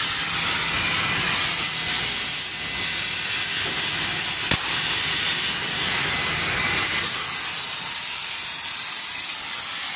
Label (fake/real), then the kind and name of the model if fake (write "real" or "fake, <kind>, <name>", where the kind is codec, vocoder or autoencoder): real